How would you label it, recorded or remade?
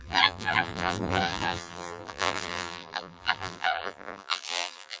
remade